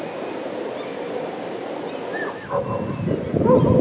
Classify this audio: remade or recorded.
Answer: recorded